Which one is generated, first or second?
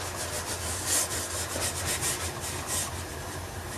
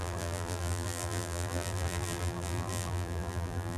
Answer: second